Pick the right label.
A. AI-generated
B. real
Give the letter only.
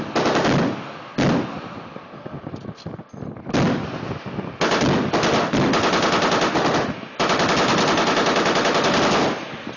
B